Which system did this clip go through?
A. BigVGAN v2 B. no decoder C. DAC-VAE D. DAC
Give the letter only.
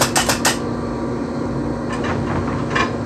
B